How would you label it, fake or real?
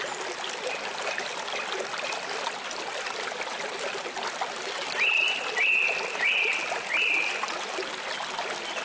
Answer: real